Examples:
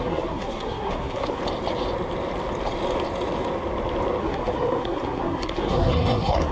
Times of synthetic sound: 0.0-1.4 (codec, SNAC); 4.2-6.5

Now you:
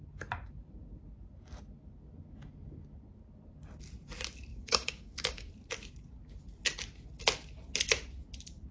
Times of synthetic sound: 4.5-5.5 (codec, DAC)

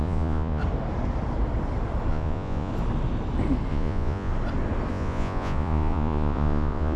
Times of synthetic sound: 0.0-0.6 (vocoder, Vocos); 2.1-2.7; 3.7-4.3; 4.9-7.0

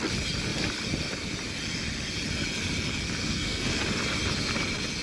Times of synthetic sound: 3.2-3.8 (codec, SNAC)

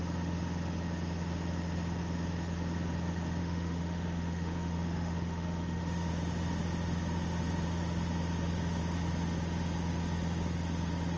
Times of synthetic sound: 3.4-6.1 (autoencoder, DAC-VAE)

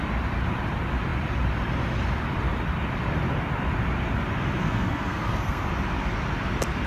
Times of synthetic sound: 4.6-5.7 (codec, SNAC)

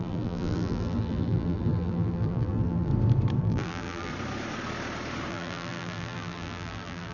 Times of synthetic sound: 0.0-2.9 (vocoder, BigVGAN v2); 3.4-4.1; 5.3-7.1